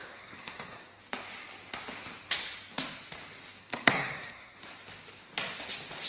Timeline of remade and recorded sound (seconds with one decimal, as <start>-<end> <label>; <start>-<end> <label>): 0.0-1.0 remade; 1.0-3.6 recorded; 3.6-4.6 remade; 4.6-6.1 recorded